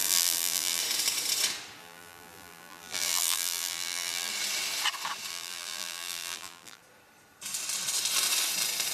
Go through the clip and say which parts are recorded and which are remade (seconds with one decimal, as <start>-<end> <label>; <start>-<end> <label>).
0.0-0.8 remade; 0.8-1.8 recorded; 1.8-4.3 remade; 4.3-5.3 recorded; 5.3-6.8 remade; 6.8-8.9 recorded